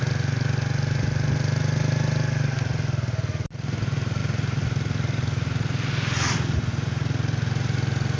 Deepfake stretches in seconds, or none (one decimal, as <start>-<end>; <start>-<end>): none